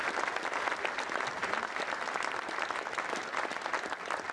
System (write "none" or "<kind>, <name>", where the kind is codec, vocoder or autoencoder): none